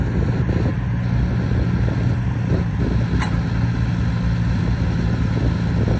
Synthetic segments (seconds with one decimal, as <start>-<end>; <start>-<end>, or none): none